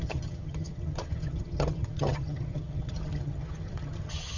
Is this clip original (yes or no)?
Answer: no